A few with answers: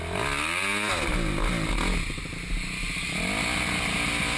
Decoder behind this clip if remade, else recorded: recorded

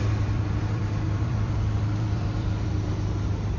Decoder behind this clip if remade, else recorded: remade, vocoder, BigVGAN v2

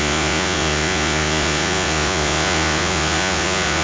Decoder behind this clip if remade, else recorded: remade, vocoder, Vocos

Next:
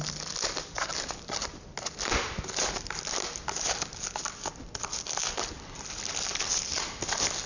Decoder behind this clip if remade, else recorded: recorded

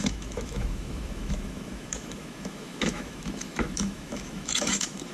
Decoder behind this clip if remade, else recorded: remade, autoencoder, DAC-VAE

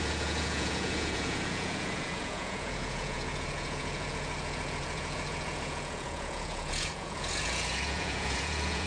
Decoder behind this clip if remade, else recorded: remade, vocoder, Vocos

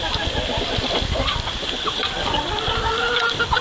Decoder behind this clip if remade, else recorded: recorded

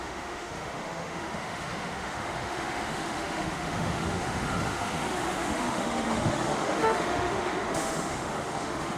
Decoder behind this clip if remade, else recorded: remade, autoencoder, DAC-VAE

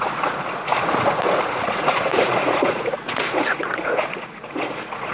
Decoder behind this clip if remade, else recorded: remade, vocoder, Vocos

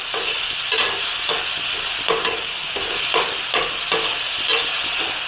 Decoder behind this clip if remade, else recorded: recorded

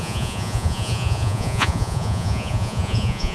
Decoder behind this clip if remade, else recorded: remade, vocoder, Vocos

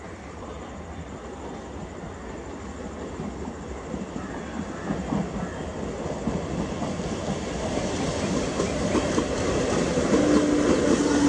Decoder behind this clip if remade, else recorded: recorded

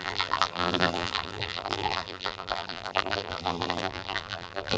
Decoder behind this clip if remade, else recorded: remade, vocoder, BigVGAN v2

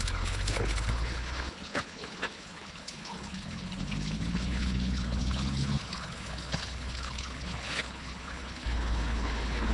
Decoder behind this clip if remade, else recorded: remade, codec, HILCodec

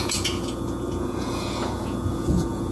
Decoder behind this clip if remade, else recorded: remade, vocoder, Vocos